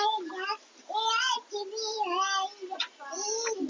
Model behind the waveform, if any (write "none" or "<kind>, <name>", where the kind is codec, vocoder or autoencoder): none